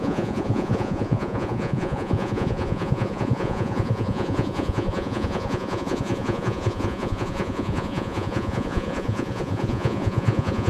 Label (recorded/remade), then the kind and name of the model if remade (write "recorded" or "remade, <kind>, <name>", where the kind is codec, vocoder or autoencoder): remade, vocoder, Vocos